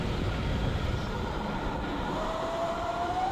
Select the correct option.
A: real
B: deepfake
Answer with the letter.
B